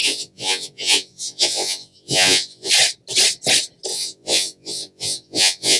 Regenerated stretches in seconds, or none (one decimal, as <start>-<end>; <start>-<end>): 0.0-2.7; 3.9-5.8